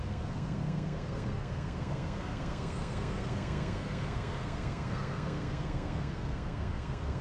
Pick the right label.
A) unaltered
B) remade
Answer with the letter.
B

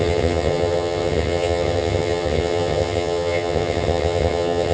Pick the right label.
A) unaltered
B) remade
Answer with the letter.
B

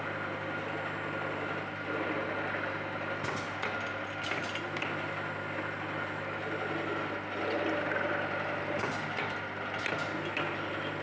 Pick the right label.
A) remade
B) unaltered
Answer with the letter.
B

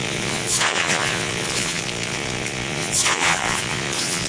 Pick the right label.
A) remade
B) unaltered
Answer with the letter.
A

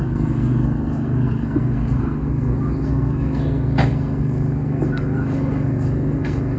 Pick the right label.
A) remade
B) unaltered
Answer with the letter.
A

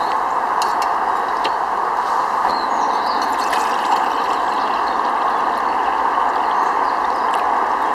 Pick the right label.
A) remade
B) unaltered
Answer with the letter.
B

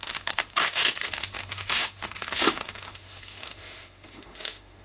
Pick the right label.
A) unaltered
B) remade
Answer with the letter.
B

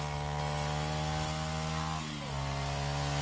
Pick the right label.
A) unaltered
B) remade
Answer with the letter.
A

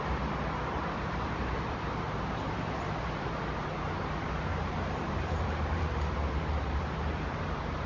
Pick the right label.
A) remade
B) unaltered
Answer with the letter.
A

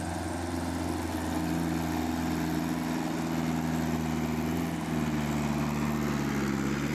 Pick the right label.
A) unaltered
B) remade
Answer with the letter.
A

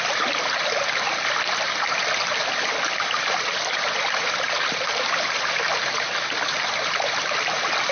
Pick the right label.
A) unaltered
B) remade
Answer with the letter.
B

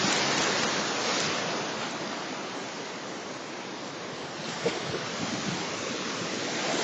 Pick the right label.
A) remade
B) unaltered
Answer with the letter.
B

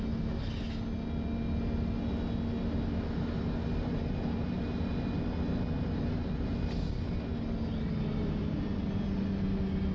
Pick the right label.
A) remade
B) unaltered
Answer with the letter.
B